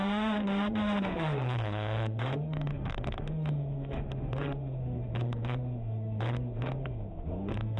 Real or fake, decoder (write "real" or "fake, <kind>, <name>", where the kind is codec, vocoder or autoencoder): fake, autoencoder, DAC-VAE